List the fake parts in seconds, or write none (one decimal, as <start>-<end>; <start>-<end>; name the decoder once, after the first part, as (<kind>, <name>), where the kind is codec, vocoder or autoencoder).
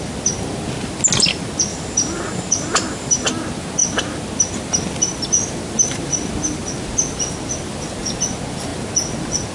1.7-3.3 (vocoder, BigVGAN v2)